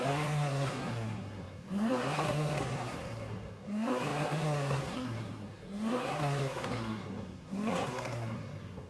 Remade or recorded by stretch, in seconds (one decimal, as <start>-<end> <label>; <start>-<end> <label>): 0.0-8.9 remade